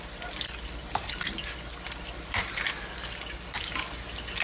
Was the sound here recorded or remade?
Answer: recorded